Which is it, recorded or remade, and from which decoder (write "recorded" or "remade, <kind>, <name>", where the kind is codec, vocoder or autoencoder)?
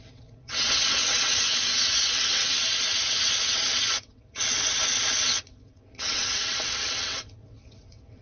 remade, vocoder, WaveNeXt